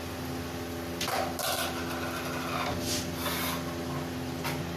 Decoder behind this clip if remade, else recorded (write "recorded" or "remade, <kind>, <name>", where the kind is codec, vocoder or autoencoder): recorded